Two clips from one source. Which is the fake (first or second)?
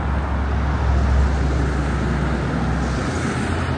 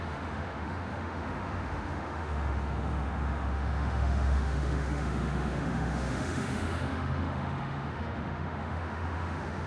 second